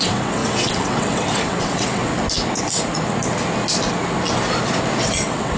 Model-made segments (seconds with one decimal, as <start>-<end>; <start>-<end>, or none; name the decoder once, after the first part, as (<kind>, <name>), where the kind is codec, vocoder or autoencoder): 0.0-2.1 (vocoder, WaveNeXt); 5.0-5.6